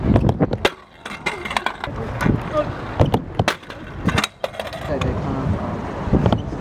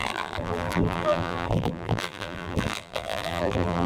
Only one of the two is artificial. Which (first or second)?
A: second